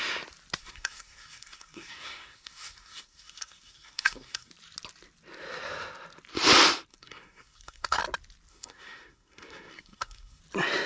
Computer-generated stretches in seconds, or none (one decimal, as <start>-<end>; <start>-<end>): 0.6-4.5; 6.9-8.0; 8.5-10.4